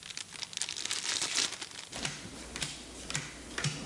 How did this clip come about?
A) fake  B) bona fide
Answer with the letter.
B